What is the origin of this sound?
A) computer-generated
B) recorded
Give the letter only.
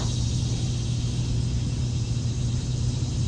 A